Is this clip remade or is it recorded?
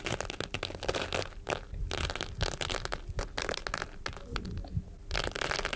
recorded